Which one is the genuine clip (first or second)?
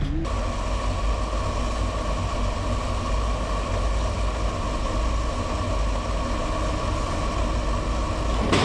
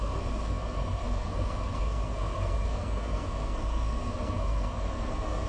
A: first